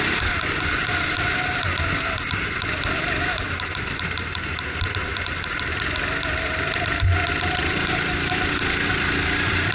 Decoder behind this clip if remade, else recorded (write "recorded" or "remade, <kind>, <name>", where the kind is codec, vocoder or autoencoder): recorded